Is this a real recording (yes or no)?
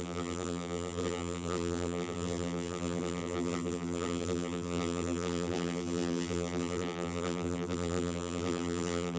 no